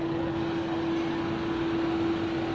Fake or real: real